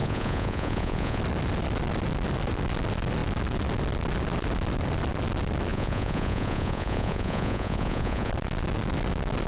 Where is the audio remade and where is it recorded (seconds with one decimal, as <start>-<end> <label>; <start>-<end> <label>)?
0.0-1.2 remade; 1.2-5.7 recorded; 5.7-8.3 remade; 8.3-9.5 recorded